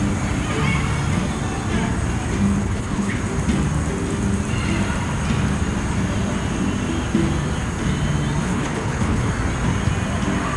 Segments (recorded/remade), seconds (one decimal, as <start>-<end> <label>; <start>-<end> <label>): 0.0-2.6 recorded; 2.6-3.2 remade; 3.2-8.4 recorded; 8.4-9.3 remade; 9.3-10.6 recorded